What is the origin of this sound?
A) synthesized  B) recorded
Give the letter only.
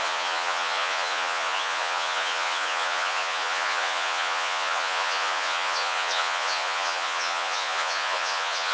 A